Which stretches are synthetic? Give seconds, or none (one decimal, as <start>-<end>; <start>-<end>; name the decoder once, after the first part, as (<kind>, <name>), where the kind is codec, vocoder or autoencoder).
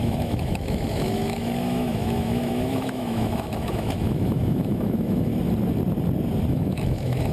0.0-5.3 (autoencoder, DAC-VAE); 6.5-7.3